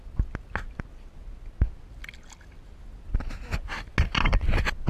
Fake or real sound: real